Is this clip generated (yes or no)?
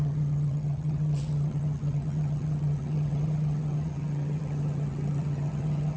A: yes